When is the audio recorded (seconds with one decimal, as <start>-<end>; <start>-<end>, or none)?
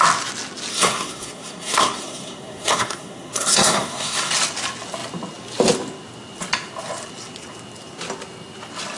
0.0-0.7; 4.3-9.0